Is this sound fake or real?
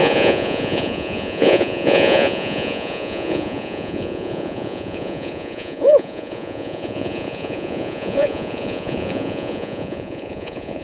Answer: fake